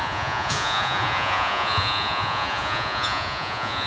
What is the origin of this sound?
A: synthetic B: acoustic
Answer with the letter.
A